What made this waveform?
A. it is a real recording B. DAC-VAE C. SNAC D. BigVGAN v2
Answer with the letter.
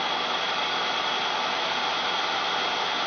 A